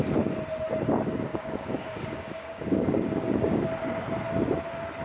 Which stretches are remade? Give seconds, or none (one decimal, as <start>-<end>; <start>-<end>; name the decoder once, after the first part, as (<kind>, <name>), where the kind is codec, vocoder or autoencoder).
1.3-3.7 (codec, DAC)